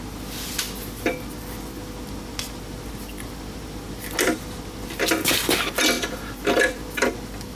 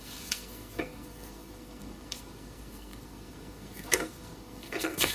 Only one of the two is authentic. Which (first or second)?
first